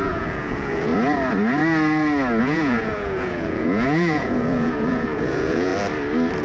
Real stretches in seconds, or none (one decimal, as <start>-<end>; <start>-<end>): 0.9-2.4; 5.7-6.4